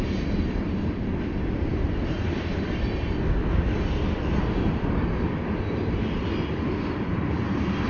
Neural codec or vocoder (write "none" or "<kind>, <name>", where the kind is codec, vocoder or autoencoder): none